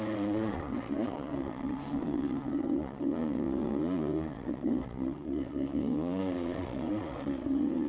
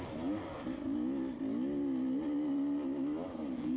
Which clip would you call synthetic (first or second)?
first